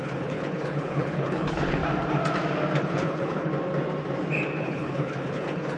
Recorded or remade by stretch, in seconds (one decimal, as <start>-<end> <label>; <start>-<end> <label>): 0.0-1.8 remade; 1.8-2.8 recorded; 2.8-3.5 remade; 3.5-4.6 recorded; 4.6-5.8 remade